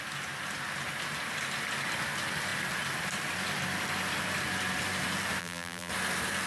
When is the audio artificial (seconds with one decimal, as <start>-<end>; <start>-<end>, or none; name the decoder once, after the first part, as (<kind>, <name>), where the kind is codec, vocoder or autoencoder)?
5.4-5.9 (vocoder, BigVGAN v2)